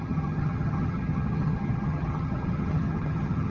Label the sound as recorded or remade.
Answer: remade